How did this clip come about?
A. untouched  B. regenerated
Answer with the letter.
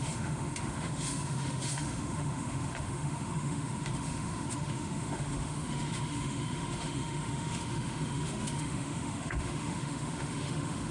B